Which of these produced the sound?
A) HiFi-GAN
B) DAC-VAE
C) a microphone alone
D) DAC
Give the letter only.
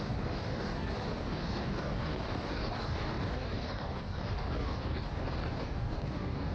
D